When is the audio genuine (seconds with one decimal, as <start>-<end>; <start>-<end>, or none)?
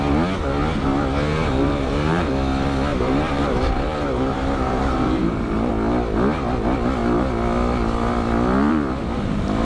0.0-1.3; 2.3-2.9; 5.7-9.6